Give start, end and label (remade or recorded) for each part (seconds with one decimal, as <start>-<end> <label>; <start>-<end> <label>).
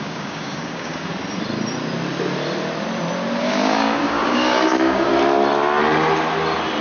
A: 0.0-1.1 remade; 1.1-3.4 recorded; 3.4-5.1 remade; 5.1-6.8 recorded